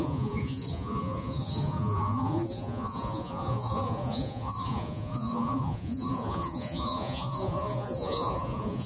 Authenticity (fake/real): fake